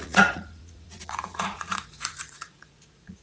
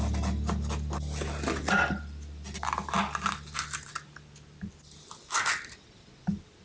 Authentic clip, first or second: second